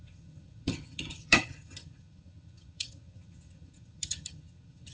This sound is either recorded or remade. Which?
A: remade